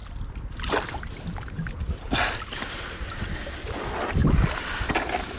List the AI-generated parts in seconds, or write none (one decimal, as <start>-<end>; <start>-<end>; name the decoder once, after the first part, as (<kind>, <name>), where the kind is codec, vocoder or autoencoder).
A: none